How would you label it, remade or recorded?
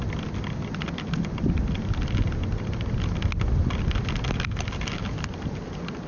recorded